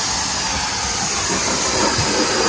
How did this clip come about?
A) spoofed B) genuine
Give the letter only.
B